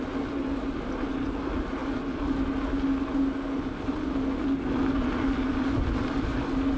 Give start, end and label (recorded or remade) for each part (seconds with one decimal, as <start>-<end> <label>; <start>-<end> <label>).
0.0-6.8 recorded